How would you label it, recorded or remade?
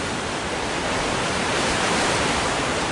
remade